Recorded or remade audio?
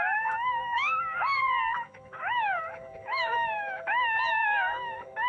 remade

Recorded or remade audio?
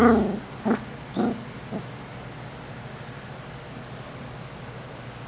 recorded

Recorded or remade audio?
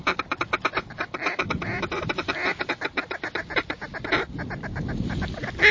recorded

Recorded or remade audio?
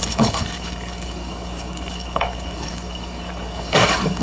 remade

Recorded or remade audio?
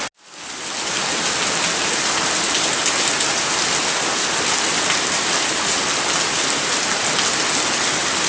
recorded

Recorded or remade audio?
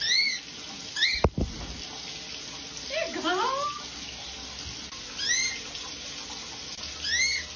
recorded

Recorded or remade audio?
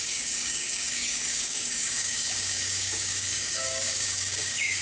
remade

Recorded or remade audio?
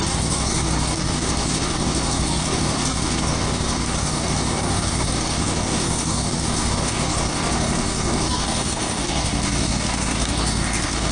remade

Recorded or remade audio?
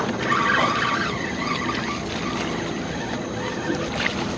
recorded